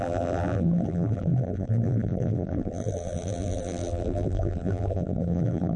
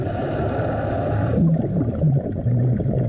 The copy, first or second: first